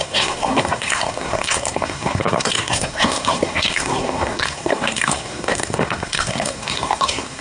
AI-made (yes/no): yes